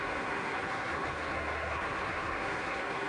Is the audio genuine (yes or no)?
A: no